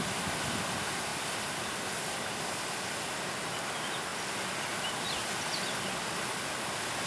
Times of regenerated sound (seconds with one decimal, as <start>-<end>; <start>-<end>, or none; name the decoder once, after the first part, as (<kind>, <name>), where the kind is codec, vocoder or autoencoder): none

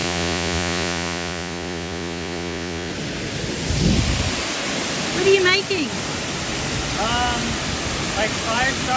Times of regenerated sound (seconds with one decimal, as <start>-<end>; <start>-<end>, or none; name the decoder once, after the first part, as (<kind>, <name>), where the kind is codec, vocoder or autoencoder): 0.0-2.9 (vocoder, Vocos)

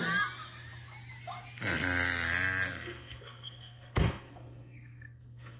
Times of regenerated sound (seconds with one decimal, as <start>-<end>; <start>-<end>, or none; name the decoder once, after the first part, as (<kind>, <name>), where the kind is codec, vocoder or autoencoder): 2.7-5.6 (codec, SNAC)

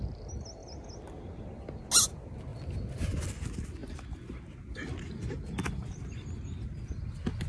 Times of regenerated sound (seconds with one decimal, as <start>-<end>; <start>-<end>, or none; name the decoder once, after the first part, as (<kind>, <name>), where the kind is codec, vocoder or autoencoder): none